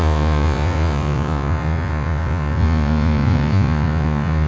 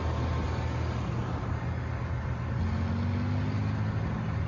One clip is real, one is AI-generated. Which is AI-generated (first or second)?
first